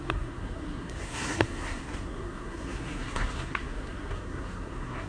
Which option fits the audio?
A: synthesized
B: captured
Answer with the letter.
A